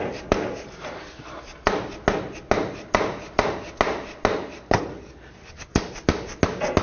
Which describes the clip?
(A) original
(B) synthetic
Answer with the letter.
A